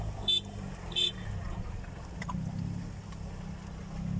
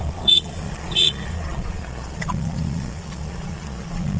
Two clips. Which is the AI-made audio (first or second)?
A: second